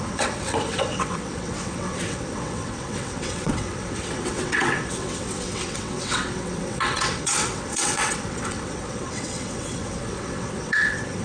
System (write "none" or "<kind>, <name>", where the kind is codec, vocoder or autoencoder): vocoder, WaveNeXt